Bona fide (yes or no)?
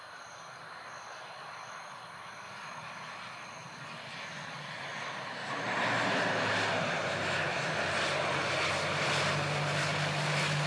yes